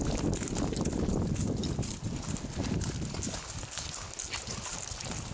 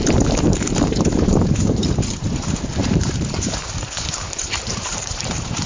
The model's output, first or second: second